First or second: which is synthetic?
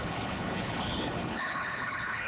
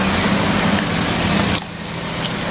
first